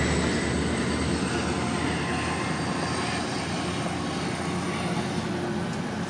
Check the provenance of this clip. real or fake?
real